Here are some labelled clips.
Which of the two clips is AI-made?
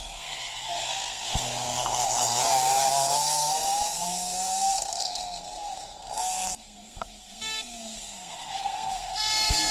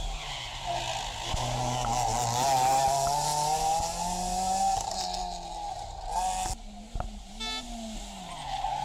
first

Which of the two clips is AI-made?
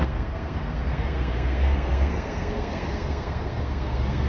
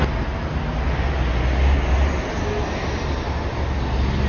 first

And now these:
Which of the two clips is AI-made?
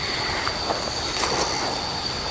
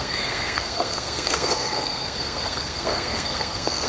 second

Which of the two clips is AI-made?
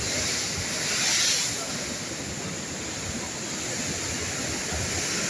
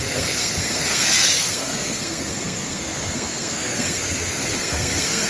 second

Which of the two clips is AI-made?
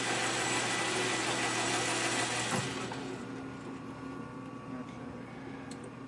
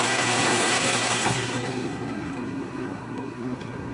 second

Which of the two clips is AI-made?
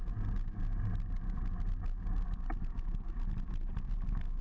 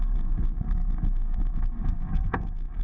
second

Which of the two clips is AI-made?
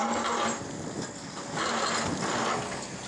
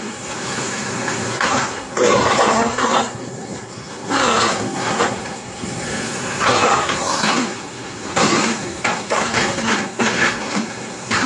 second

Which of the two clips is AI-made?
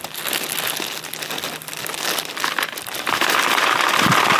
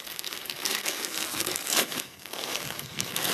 second